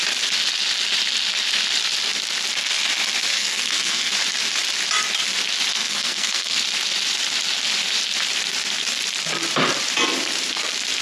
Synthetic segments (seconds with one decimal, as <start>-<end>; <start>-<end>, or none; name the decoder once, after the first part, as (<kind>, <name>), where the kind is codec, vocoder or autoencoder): 3.3-4.1 (codec, SNAC); 5.7-6.6